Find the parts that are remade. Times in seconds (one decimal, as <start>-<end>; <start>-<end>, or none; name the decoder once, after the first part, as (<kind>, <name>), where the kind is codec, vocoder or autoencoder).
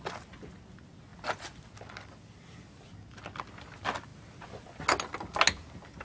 none